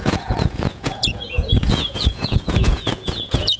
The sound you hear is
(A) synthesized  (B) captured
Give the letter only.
A